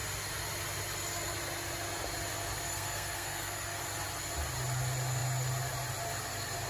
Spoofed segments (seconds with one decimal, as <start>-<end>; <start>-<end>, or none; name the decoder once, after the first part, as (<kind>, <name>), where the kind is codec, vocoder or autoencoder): 2.7-3.8 (codec, SNAC)